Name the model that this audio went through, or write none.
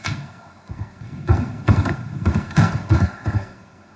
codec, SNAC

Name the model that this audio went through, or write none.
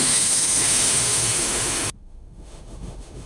autoencoder, DAC-VAE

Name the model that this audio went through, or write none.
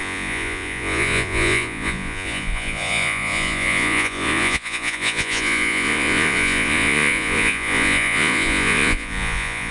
vocoder, Vocos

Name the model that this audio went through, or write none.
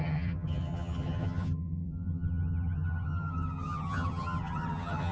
vocoder, HiFi-GAN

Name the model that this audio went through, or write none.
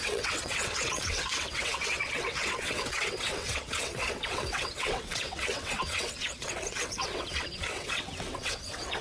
vocoder, WaveNeXt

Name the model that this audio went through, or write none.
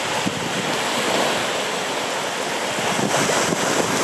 none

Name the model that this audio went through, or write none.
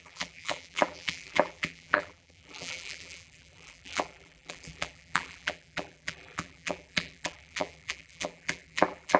vocoder, BigVGAN v2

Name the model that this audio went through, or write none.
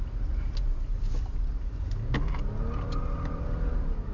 none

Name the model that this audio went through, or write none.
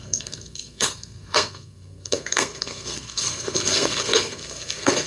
codec, SNAC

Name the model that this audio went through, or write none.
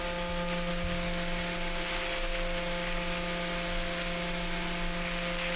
none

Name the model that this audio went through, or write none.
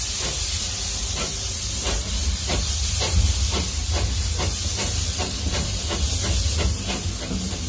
none